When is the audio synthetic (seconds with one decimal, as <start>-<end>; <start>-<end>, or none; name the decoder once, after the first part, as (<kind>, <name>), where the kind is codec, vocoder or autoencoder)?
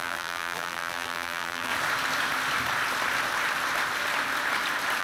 0.0-1.7 (vocoder, BigVGAN v2)